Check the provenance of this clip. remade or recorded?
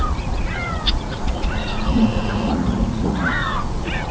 remade